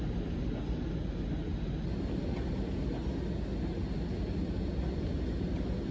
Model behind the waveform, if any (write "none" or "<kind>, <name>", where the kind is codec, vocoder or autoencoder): none